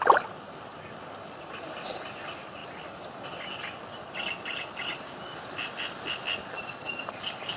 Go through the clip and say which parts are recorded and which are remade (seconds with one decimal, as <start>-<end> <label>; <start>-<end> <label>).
0.0-0.7 recorded; 0.7-1.2 remade; 1.2-7.6 recorded